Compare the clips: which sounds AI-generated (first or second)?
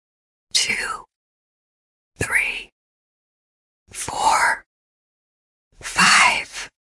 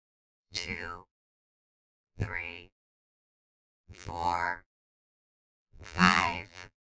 second